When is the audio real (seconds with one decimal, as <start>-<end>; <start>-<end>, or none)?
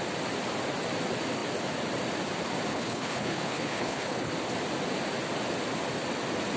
0.0-2.7; 4.3-6.6